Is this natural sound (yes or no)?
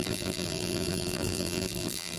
no